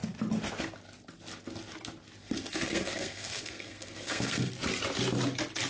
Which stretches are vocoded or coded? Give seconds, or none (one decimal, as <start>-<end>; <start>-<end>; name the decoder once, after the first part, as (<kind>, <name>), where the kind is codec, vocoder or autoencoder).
2.2-4.5 (codec, SNAC)

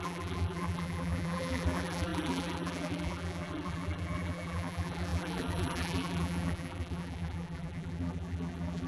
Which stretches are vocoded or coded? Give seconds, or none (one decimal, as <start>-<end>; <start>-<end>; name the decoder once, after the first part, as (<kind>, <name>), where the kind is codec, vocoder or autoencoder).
0.0-8.9 (vocoder, BigVGAN v2)

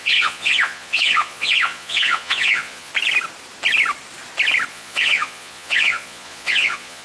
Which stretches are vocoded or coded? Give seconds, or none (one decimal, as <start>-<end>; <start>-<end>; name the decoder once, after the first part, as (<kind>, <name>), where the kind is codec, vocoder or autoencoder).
0.0-2.9 (vocoder, Vocos); 4.7-7.0

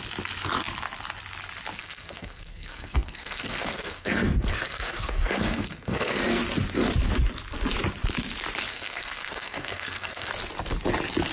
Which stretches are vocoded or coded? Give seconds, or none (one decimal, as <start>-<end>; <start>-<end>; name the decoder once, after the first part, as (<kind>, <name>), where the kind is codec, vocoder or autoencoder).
1.8-6.4 (codec, SNAC); 8.7-10.3

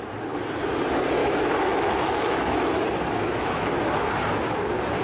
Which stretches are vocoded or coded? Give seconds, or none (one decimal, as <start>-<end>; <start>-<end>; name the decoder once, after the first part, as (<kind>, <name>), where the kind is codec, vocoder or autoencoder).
1.2-4.1 (autoencoder, DAC-VAE)

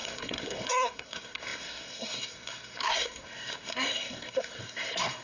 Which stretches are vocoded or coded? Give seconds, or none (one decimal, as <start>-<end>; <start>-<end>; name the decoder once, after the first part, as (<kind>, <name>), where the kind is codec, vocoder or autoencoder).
0.0-5.2 (codec, SNAC)

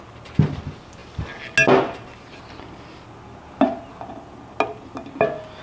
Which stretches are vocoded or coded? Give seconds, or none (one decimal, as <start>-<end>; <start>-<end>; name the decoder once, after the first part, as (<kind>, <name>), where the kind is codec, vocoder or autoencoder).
none

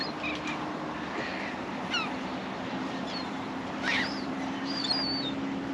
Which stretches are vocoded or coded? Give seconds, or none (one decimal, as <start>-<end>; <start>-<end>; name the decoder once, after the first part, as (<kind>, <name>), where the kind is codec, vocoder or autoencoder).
3.0-4.8 (vocoder, BigVGAN v2)